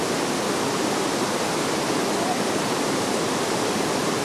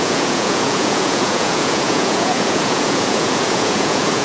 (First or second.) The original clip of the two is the first